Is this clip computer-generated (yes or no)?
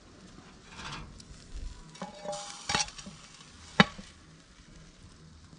no